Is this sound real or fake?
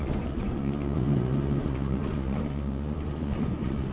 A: fake